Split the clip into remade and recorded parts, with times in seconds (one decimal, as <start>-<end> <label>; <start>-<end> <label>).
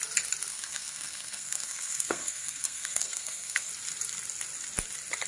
0.0-0.5 recorded; 0.5-3.7 remade; 3.7-5.3 recorded